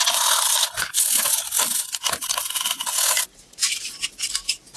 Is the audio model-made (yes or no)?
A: no